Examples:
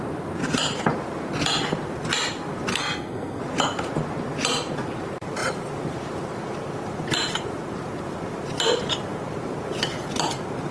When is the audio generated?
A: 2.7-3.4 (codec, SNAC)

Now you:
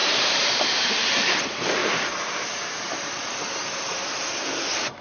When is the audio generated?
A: 0.0-1.3 (vocoder, BigVGAN v2); 1.8-5.0

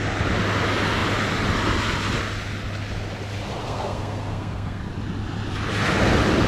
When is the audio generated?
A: 3.6-4.8 (codec, SNAC)

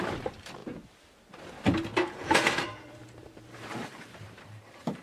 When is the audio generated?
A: 0.0-0.6 (vocoder, BigVGAN v2); 1.3-1.9; 2.6-5.0